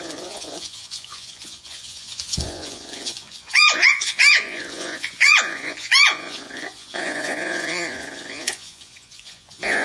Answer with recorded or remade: remade